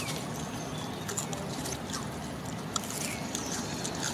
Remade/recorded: recorded